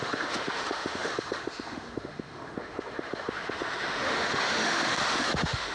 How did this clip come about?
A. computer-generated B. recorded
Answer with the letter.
A